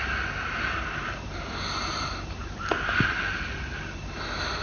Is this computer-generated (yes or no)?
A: no